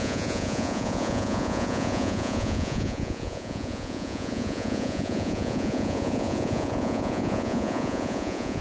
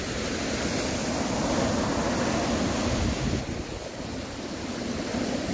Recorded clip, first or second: second